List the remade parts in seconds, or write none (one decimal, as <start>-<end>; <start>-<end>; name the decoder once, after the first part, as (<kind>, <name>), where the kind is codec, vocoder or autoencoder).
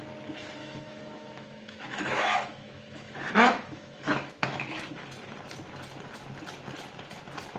0.6-4.9 (autoencoder, DAC-VAE)